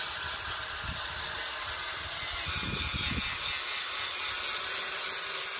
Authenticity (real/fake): real